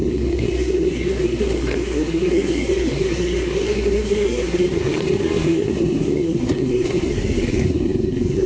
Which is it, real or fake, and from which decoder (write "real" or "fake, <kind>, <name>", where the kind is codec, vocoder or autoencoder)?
fake, codec, SNAC